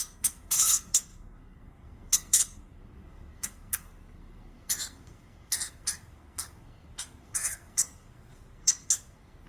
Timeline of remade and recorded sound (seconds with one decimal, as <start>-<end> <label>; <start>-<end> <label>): 0.0-9.5 remade